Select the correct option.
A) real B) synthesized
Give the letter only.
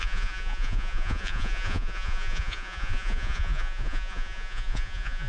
B